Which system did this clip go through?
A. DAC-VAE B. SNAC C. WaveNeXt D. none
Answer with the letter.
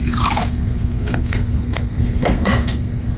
B